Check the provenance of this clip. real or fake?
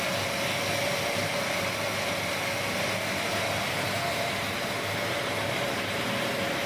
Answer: real